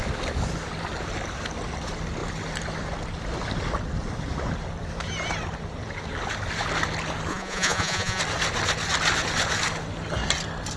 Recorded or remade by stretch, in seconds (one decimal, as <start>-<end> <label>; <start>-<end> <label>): 0.0-7.3 recorded; 7.3-8.2 remade; 8.2-10.8 recorded